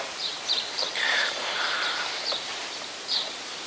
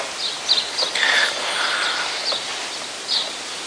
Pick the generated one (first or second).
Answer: first